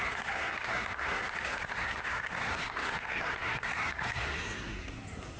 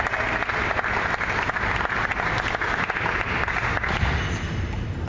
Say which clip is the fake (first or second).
first